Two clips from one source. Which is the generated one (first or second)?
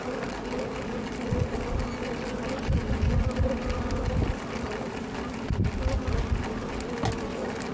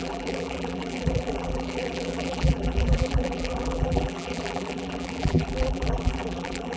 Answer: second